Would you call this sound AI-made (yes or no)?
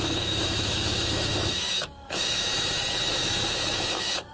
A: yes